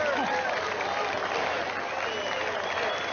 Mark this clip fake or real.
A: real